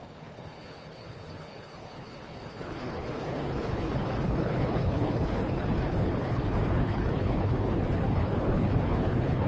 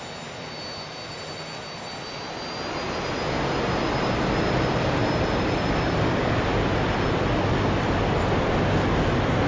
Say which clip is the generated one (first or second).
first